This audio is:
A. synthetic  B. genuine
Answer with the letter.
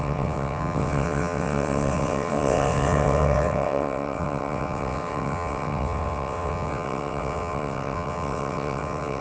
A